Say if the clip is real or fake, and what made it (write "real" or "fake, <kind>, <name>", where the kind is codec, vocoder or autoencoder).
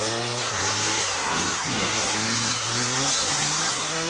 fake, codec, SNAC